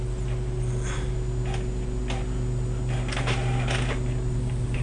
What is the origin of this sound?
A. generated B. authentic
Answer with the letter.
B